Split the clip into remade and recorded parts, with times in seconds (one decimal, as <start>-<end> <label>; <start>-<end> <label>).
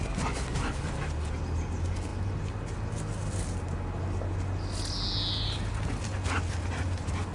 0.0-7.3 recorded